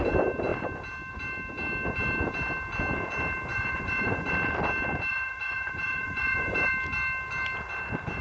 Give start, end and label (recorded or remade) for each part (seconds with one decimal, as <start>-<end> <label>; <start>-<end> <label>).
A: 0.0-3.5 recorded; 3.5-4.3 remade; 4.3-5.1 recorded; 5.1-6.7 remade; 6.7-8.2 recorded